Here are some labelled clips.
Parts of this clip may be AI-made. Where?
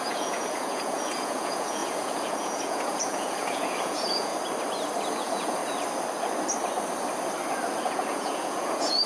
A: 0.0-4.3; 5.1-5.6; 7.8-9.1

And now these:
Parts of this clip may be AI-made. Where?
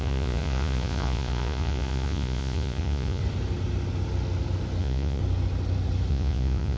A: 0.0-3.2; 4.8-5.2; 6.1-6.8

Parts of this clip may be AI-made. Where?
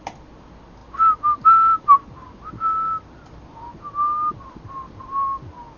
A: none